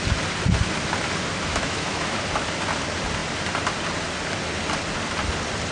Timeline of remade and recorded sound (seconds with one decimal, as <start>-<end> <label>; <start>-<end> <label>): 0.0-1.5 recorded; 1.5-2.2 remade; 2.2-5.7 recorded